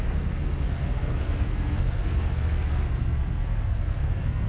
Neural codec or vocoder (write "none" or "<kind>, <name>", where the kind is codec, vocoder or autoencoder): codec, SNAC